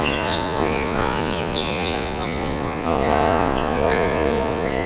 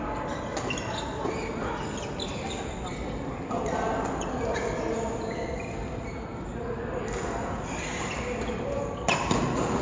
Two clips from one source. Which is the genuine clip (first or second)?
second